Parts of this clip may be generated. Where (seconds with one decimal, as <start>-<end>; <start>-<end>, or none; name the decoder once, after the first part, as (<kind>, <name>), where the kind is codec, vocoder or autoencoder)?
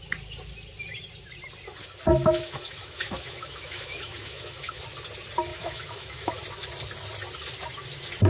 2.1-4.8 (autoencoder, DAC-VAE); 5.5-6.4